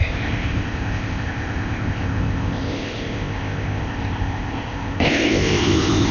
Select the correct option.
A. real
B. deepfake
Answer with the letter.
B